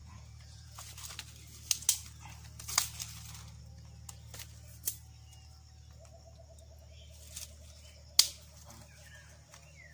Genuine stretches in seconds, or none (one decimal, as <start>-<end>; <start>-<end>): 0.9-9.9